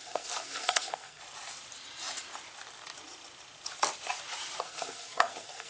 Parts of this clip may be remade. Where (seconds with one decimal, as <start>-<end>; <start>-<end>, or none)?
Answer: 0.0-1.2; 4.6-5.7